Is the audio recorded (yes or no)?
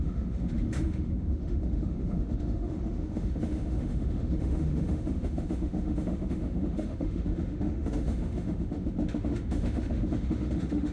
no